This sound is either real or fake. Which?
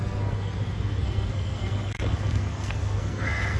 fake